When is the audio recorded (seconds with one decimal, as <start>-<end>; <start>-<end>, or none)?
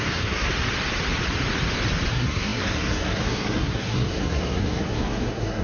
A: 0.5-2.1